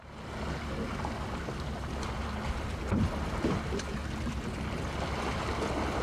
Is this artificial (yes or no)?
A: no